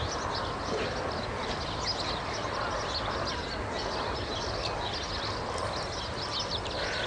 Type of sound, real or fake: real